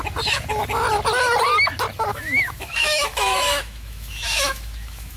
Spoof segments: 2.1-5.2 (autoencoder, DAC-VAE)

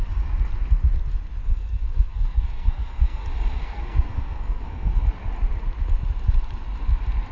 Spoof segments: 1.4-3.2 (codec, SNAC); 3.6-5.0

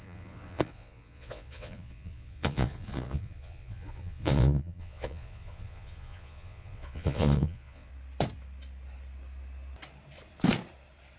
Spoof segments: 0.0-7.9 (vocoder, Vocos)

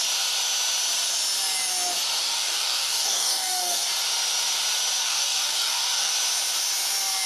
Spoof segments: 2.2-3.9 (codec, DAC); 5.0-6.1

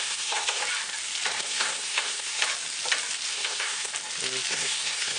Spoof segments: 0.0-0.6 (codec, SNAC); 1.3-2.4; 3.3-3.9; 4.5-5.2